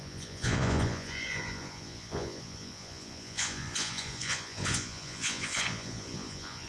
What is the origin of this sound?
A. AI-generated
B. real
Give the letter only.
A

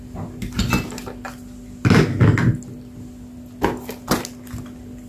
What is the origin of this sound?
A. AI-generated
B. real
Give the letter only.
B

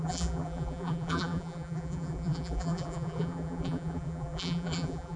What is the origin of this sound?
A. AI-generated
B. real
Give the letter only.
A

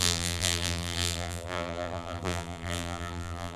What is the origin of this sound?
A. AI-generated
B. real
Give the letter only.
A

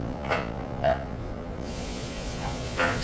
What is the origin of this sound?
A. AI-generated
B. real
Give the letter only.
A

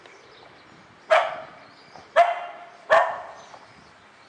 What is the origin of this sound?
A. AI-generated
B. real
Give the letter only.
B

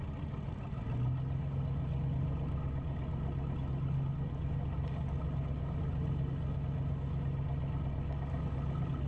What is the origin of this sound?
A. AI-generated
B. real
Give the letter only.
B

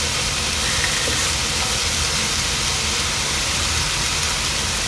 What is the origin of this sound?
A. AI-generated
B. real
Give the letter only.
B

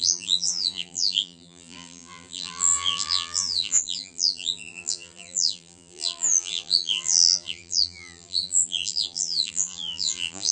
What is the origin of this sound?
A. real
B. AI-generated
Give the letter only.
B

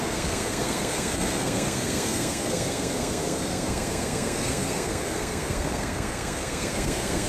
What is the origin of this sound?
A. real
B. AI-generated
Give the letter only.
B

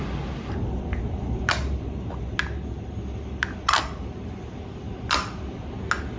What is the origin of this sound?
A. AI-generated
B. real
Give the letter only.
B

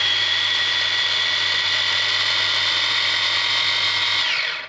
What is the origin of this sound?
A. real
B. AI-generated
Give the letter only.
A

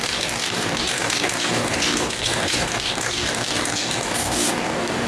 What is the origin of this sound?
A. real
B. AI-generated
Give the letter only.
B